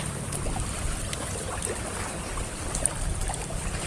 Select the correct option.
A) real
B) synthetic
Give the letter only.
A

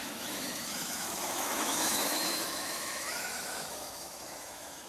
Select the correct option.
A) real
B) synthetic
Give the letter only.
B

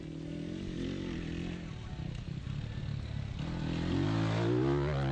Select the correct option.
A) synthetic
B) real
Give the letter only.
B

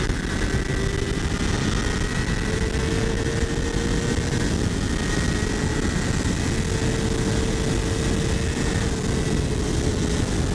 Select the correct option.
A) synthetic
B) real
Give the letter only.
B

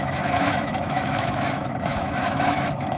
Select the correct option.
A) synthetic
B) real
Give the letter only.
A